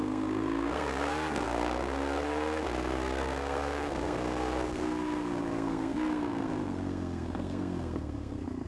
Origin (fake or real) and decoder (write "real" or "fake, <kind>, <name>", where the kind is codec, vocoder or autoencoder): fake, codec, SNAC